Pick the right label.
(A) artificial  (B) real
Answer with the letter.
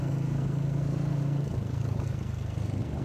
A